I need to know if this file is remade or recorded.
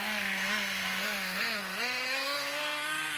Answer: remade